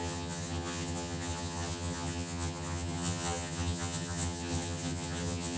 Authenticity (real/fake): fake